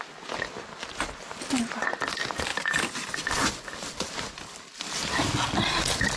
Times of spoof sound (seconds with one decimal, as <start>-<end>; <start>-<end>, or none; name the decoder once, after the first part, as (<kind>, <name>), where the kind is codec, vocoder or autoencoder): none